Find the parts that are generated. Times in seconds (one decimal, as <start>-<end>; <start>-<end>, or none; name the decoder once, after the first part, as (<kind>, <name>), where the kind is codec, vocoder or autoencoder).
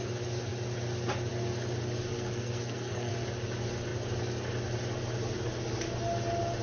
2.1-3.1 (codec, SNAC)